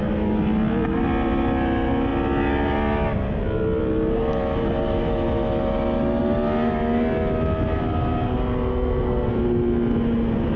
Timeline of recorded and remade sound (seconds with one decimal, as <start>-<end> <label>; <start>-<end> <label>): 0.0-8.7 recorded; 8.7-9.3 remade; 9.3-10.6 recorded